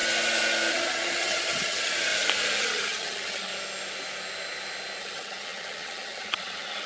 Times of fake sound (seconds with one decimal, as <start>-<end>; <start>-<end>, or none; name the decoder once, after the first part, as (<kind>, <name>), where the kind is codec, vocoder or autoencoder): 0.7-2.1 (vocoder, HiFi-GAN); 2.6-3.5; 5.0-6.9